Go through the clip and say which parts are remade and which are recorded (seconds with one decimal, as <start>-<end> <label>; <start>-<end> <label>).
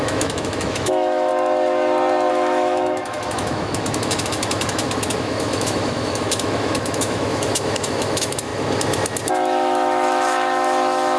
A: 0.0-1.3 remade; 1.3-2.3 recorded; 2.3-8.5 remade; 8.5-9.3 recorded; 9.3-11.2 remade